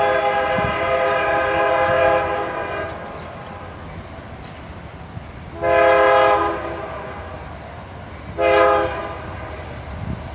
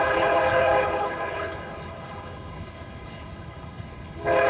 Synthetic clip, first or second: second